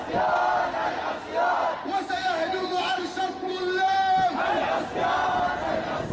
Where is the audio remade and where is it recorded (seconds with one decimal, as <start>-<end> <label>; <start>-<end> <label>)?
0.0-2.2 recorded; 2.2-3.1 remade; 3.1-6.1 recorded